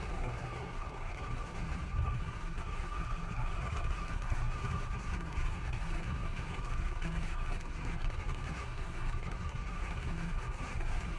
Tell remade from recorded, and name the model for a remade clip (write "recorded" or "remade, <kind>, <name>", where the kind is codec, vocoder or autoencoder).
remade, codec, SNAC